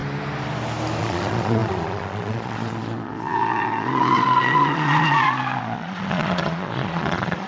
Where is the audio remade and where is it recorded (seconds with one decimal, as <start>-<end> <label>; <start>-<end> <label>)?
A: 0.0-1.0 recorded; 1.0-7.5 remade